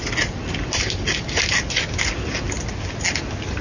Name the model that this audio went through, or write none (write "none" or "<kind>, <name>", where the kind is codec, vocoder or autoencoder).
none